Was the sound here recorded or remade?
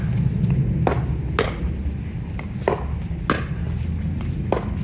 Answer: recorded